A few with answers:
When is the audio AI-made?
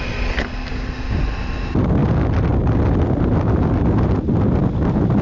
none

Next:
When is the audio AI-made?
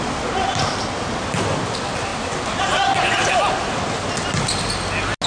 none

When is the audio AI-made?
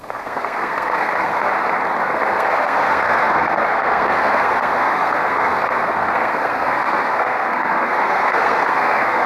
0.0-1.5 (codec, SNAC); 2.0-9.3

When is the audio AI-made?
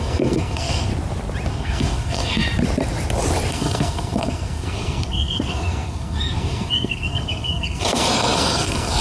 0.0-0.9 (codec, SNAC); 1.5-2.4; 3.5-9.0